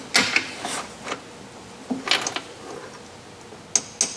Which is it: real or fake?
real